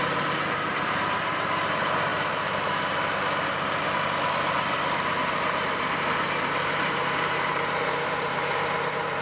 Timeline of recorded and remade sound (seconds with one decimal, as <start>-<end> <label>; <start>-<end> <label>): 0.0-9.2 remade